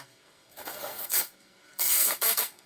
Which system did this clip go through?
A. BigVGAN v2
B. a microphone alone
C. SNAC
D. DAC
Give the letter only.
C